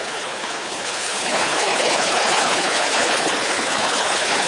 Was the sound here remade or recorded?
remade